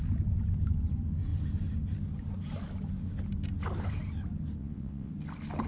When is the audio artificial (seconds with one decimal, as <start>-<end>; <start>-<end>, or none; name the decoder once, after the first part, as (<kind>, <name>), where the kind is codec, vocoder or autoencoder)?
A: 4.6-5.1 (vocoder, WaveNeXt)

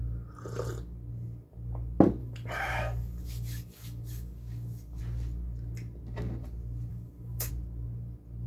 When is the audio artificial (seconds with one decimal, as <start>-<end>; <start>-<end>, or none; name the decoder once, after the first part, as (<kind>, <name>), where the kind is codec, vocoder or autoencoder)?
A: 2.2-5.0 (codec, DAC); 6.9-7.5

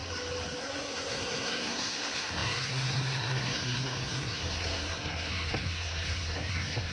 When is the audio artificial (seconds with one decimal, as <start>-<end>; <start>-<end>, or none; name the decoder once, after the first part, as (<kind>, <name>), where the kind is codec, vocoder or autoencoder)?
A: 0.6-6.9 (codec, SNAC)

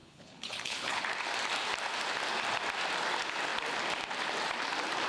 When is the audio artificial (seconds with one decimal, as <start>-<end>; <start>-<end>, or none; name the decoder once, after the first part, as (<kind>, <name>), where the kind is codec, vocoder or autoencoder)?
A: 0.0-1.0 (codec, HILCodec)

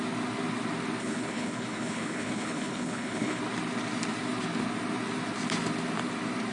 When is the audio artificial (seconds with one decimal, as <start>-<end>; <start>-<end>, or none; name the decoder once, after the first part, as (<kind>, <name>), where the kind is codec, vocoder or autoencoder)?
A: 1.0-3.4 (codec, HILCodec)

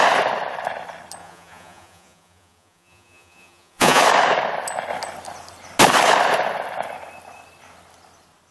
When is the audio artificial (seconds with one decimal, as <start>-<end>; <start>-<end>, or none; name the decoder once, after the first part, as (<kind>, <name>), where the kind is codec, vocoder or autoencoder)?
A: 1.2-4.0 (vocoder, Vocos)

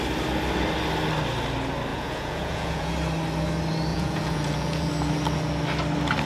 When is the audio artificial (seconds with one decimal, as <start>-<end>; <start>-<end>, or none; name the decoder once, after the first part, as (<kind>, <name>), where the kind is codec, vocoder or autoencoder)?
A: 1.9-2.9 (vocoder, Vocos); 3.9-4.9

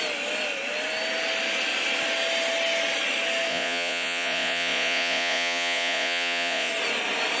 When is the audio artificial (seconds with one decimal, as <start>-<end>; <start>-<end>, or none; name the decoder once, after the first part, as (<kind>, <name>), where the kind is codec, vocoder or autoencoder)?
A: 3.5-6.7 (vocoder, Vocos)